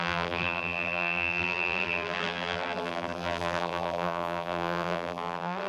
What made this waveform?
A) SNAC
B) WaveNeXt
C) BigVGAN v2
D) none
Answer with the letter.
C